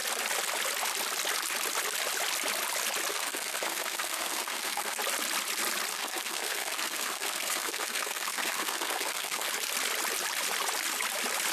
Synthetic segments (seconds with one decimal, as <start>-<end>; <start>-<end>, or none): 3.1-5.0; 5.9-9.5

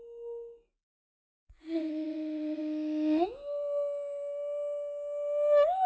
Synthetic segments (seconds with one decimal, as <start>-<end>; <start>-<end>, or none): 1.4-2.6